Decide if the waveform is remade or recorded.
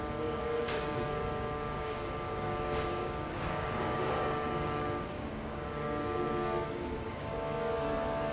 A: remade